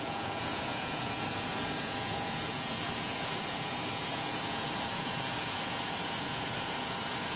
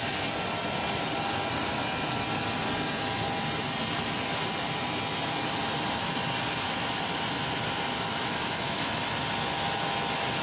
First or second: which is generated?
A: first